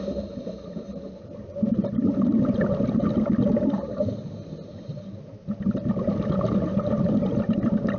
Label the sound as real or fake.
real